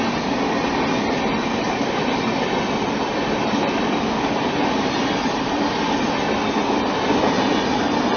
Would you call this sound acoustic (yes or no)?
yes